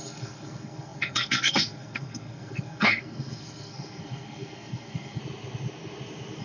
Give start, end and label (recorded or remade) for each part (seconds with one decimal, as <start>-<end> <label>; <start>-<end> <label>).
0.0-5.2 remade; 5.2-6.4 recorded